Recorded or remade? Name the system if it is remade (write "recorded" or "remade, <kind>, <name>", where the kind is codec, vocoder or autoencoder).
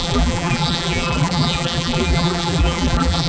remade, vocoder, BigVGAN v2